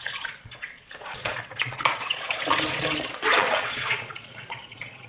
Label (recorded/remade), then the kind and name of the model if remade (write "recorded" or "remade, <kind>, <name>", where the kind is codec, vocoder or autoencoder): remade, vocoder, Vocos